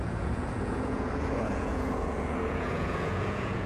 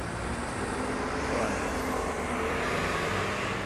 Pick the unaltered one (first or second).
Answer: second